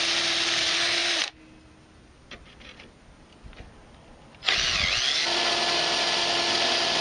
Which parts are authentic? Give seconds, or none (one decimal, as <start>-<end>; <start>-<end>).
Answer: 0.0-7.0